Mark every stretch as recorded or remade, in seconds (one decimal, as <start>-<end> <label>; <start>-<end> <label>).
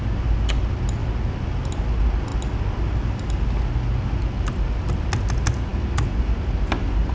0.0-7.1 recorded